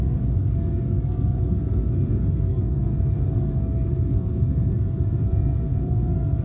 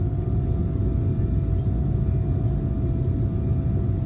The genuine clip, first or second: second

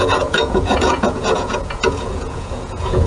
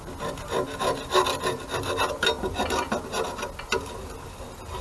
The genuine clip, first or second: second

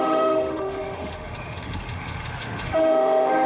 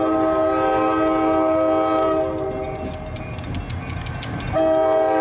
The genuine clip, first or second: second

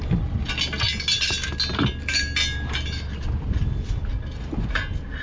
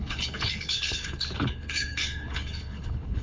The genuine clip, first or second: first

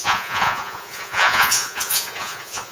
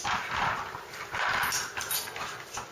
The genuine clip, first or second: second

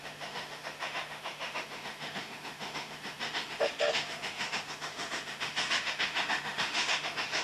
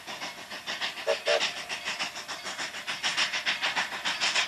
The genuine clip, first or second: second